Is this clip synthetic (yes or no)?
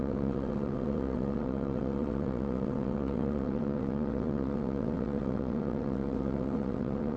yes